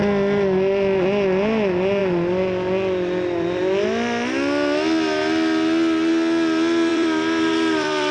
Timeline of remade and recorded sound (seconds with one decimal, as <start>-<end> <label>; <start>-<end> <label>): 0.0-6.9 recorded; 6.9-8.1 remade